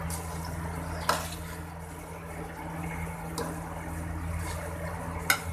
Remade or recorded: recorded